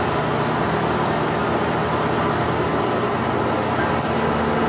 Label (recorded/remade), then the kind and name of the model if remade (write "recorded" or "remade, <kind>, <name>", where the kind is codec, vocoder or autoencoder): recorded